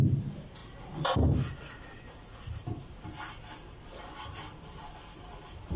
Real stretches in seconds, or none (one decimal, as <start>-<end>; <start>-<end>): none